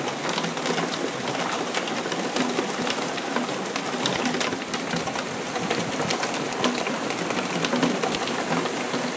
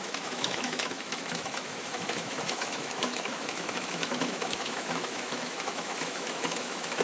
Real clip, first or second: first